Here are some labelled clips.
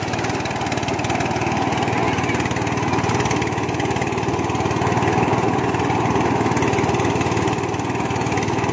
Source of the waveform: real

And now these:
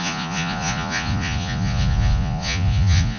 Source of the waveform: fake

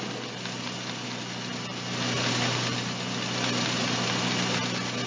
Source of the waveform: real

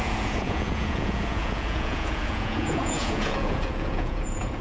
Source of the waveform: fake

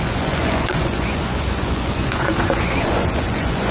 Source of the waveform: fake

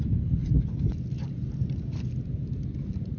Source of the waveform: real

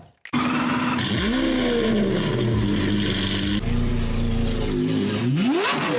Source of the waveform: real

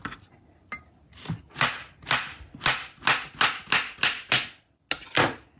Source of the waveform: real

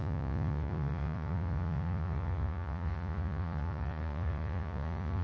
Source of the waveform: fake